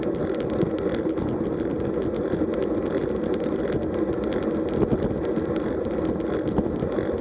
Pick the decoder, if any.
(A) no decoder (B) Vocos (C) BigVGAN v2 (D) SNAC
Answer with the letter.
A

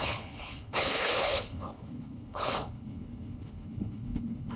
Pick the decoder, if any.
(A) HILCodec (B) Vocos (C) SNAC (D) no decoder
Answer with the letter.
A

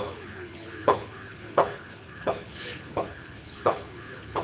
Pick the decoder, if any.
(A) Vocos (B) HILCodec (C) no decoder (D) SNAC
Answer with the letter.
B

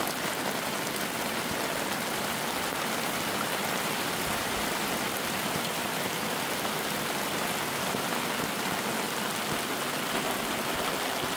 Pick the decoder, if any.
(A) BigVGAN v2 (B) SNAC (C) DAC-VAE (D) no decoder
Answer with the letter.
D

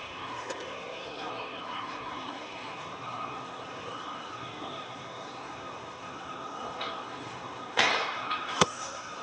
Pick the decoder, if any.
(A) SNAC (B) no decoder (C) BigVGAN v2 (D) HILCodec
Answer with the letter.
A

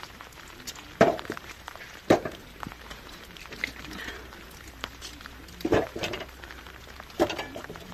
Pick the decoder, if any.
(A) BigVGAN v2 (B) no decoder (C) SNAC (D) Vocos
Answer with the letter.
A